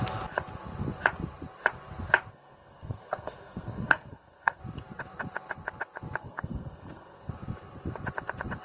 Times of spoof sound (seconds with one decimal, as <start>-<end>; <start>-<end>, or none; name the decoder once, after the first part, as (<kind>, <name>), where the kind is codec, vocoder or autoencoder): 2.3-4.6 (codec, SNAC); 6.2-7.3